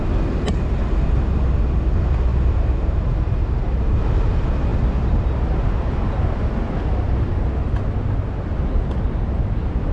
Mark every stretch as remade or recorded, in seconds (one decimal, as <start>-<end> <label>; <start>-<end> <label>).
0.0-9.9 recorded